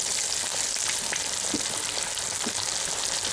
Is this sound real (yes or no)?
yes